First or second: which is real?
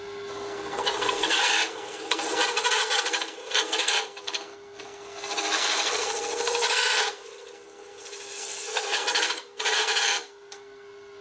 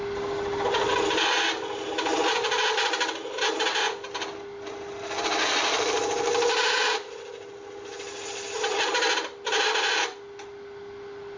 second